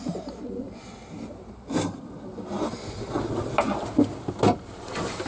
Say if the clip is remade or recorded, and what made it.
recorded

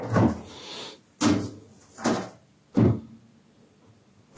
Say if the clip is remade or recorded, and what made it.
recorded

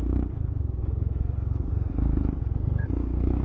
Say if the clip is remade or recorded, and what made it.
remade, codec, SNAC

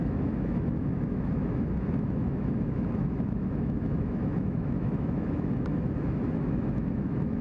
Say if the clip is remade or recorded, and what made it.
remade, autoencoder, DAC-VAE